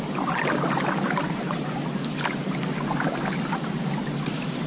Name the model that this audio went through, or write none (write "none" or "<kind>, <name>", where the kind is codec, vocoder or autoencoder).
none